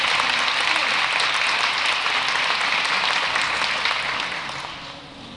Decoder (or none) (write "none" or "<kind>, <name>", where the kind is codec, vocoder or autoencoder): none